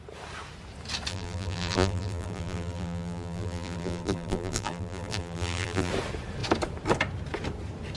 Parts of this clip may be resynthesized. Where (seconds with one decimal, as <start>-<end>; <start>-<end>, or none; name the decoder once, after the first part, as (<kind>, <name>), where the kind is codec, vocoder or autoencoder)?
1.1-5.9 (vocoder, BigVGAN v2)